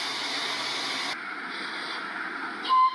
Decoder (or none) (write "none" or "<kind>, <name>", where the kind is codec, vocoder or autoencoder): none